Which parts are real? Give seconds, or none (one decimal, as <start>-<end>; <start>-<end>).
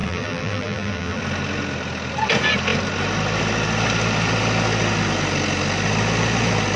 1.2-6.8